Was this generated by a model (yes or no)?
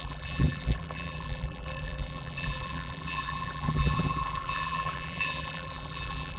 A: yes